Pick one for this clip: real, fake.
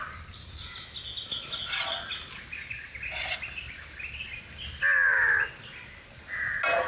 real